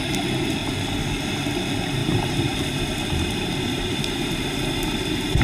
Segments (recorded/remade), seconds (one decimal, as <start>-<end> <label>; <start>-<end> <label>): 0.0-2.0 recorded; 2.0-5.4 remade